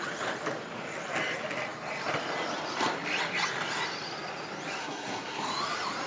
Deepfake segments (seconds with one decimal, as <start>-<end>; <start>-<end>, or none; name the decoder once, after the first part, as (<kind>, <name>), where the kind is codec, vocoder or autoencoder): 4.8-5.5 (codec, SNAC)